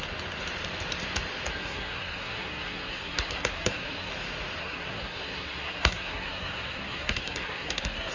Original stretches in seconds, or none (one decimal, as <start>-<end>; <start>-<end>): 0.0-1.5; 4.1-4.6